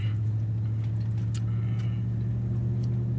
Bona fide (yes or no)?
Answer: yes